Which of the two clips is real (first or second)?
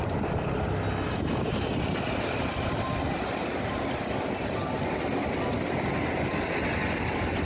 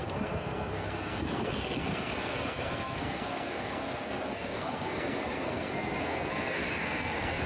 first